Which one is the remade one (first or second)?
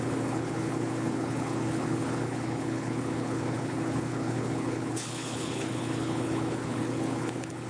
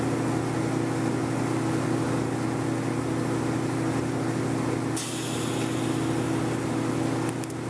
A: first